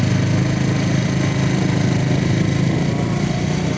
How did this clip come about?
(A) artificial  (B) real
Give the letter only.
B